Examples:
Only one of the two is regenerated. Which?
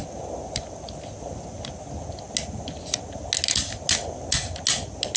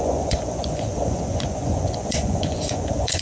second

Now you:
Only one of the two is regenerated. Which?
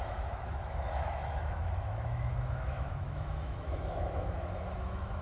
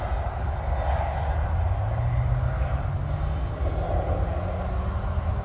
first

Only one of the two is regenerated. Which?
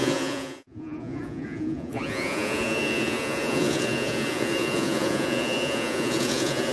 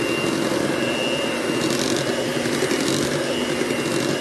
first